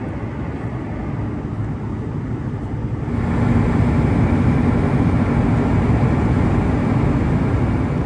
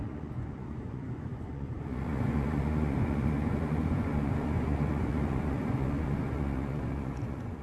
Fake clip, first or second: second